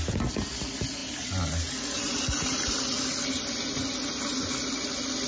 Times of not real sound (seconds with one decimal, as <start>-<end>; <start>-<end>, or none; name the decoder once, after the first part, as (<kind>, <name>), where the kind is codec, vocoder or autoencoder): none